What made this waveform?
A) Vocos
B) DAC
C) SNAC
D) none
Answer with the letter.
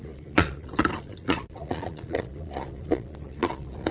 A